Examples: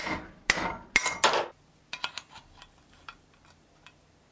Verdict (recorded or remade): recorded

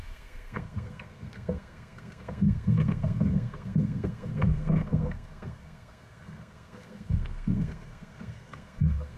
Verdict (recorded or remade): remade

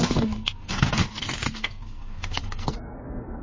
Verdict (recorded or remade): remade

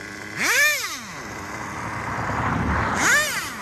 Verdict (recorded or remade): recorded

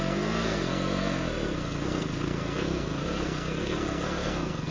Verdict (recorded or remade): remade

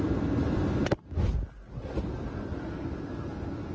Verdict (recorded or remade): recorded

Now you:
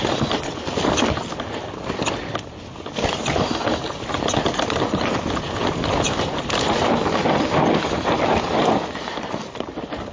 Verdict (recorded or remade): recorded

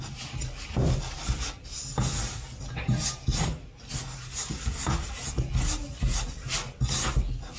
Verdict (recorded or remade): recorded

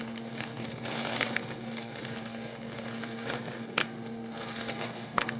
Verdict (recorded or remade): remade